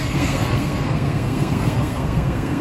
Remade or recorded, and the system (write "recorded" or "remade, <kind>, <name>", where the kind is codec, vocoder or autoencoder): remade, codec, SNAC